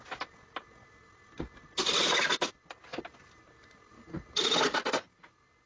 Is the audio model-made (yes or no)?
no